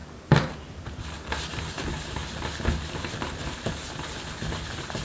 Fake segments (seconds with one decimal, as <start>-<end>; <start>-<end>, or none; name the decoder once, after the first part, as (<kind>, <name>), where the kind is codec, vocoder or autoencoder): none